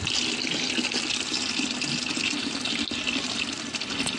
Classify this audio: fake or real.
real